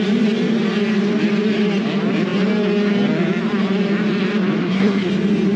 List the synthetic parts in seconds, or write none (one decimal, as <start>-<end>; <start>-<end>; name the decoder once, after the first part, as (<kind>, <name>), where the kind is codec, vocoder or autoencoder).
4.6-5.1 (codec, SNAC)

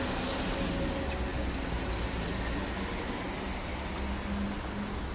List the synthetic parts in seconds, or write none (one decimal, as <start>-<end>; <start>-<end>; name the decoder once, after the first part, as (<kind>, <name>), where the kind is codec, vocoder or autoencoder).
none

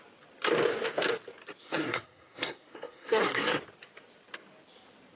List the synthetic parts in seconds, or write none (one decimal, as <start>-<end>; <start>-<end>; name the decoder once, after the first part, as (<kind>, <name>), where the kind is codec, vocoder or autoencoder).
1.6-3.6 (codec, SNAC)

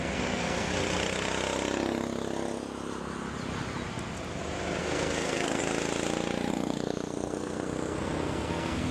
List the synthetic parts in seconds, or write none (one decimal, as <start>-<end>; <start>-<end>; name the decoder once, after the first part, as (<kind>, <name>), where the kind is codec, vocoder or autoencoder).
0.0-0.7 (codec, SNAC); 4.8-5.6; 6.5-8.9

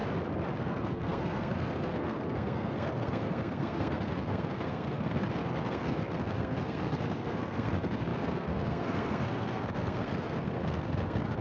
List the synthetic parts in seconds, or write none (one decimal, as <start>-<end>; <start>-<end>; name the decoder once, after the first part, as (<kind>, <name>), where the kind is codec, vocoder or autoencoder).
0.6-11.4 (codec, SNAC)

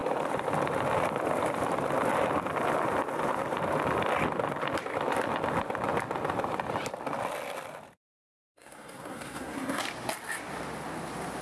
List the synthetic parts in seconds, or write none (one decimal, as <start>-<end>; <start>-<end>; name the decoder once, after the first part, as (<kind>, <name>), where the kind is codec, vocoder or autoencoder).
8.4-9.8 (codec, SNAC)

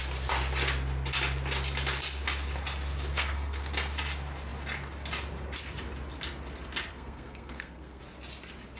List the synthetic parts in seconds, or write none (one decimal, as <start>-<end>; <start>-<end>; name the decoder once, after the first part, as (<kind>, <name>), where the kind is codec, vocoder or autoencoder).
3.1-3.7 (codec, SNAC); 6.9-8.0

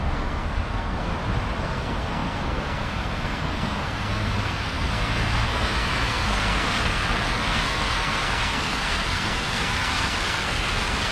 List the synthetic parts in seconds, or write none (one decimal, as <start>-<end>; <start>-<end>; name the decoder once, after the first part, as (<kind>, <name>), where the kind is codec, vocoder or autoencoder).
0.0-1.1 (codec, SNAC); 1.6-11.1